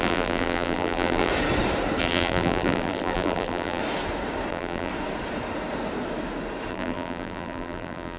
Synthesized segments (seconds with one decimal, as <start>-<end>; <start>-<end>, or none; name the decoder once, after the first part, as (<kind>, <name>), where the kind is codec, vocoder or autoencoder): 0.0-1.3 (vocoder, BigVGAN v2); 2.0-3.8; 4.5-4.9; 6.7-8.2